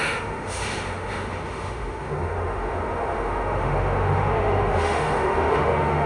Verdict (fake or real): fake